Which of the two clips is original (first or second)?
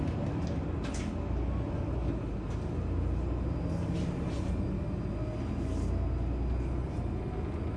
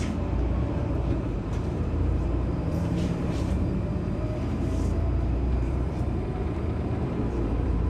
first